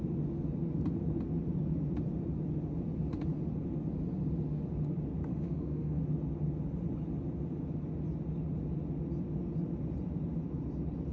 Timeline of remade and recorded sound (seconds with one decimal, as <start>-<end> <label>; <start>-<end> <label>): 0.0-5.3 recorded; 5.3-6.0 remade; 6.0-11.1 recorded